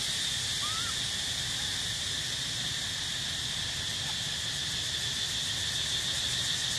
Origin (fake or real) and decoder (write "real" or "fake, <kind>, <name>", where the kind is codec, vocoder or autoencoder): real